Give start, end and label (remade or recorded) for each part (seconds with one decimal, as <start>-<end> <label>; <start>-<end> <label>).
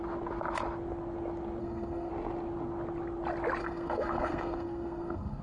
0.0-1.6 recorded; 1.6-2.1 remade; 2.1-3.6 recorded; 3.6-5.4 remade